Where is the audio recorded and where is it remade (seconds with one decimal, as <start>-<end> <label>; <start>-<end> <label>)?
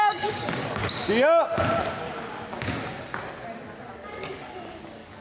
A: 0.0-0.8 remade; 0.8-3.9 recorded; 3.9-5.2 remade